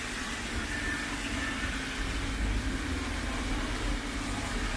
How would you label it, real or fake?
real